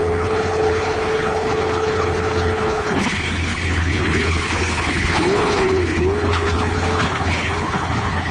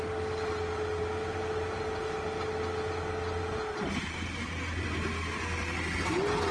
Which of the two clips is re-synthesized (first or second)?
first